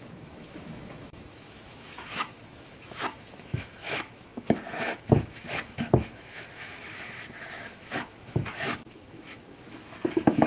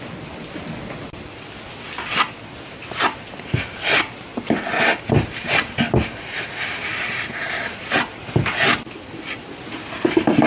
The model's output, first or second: first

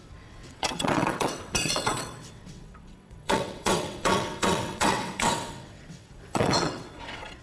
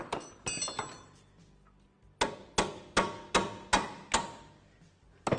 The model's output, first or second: first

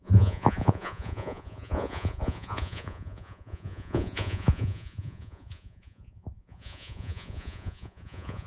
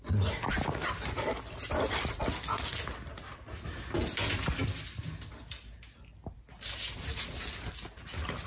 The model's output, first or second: first